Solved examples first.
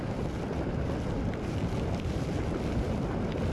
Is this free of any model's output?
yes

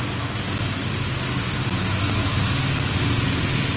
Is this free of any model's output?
yes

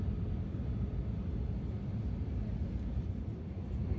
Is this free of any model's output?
yes